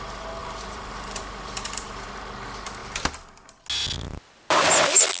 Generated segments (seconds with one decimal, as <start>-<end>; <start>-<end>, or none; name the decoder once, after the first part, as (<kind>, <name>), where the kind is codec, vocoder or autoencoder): 0.4-2.1 (vocoder, BigVGAN v2)